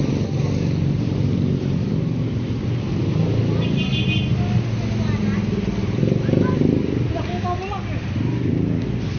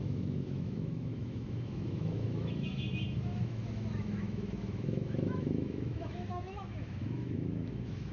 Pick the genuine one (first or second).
first